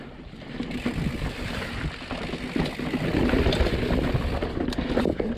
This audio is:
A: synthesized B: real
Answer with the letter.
B